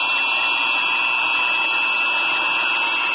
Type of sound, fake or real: real